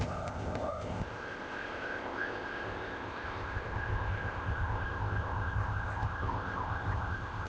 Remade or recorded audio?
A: remade